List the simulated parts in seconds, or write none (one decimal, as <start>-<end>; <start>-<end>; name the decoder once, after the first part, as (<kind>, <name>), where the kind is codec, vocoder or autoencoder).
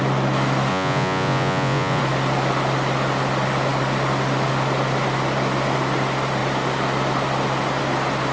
0.7-2.0 (vocoder, Vocos)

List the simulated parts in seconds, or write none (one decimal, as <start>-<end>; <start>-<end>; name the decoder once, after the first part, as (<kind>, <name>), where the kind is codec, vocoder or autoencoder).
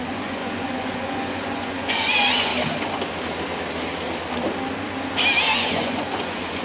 0.0-2.5 (vocoder, Vocos); 5.5-6.6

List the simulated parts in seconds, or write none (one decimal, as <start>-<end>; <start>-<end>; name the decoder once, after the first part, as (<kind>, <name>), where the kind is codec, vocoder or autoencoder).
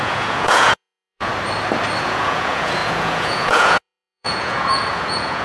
0.0-1.3 (vocoder, Vocos); 2.0-5.4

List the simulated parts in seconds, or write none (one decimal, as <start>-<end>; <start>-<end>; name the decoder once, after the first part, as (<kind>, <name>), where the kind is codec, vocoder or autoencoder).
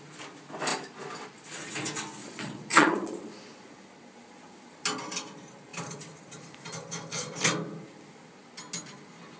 2.2-3.3 (vocoder, Vocos)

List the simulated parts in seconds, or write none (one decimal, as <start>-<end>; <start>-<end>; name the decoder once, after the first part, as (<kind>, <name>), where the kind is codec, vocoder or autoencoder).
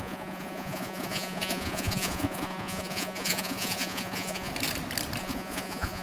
0.0-4.5 (vocoder, Vocos); 5.2-6.0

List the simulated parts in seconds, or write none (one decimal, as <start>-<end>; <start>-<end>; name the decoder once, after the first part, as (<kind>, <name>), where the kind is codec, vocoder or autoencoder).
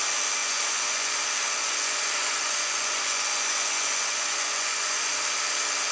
0.4-1.1 (vocoder, Vocos); 1.6-5.1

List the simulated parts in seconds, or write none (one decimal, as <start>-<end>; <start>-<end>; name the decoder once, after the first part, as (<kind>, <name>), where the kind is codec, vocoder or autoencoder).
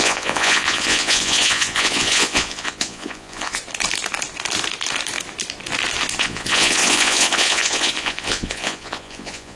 0.0-3.6 (vocoder, Vocos); 6.2-9.6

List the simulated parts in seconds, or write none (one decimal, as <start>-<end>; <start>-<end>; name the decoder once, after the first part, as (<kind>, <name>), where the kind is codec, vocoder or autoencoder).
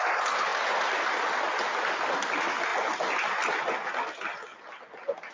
none